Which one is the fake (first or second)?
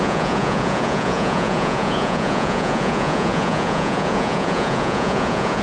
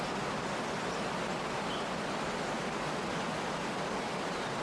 first